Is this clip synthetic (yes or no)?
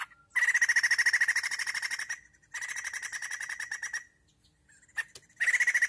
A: no